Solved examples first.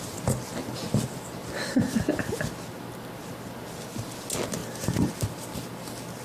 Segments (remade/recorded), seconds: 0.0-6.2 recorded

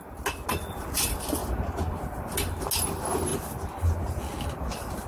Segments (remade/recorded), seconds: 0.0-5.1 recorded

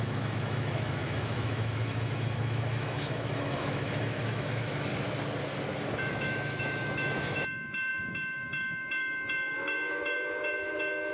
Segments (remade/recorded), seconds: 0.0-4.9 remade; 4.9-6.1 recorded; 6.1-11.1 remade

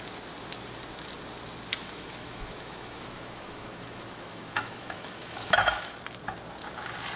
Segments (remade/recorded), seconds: 0.0-1.7 recorded; 1.7-6.0 remade; 6.0-7.2 recorded

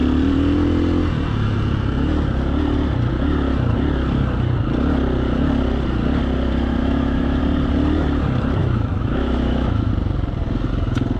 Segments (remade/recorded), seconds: 0.0-6.8 recorded; 6.8-7.4 remade; 7.4-8.6 recorded; 8.6-9.9 remade; 9.9-11.2 recorded

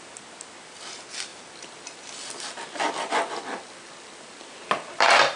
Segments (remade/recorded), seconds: 0.0-5.4 recorded

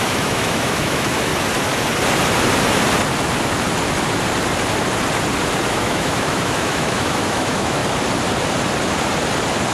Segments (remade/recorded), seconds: 0.0-1.3 remade; 1.3-5.7 recorded; 5.7-7.8 remade; 7.8-9.7 recorded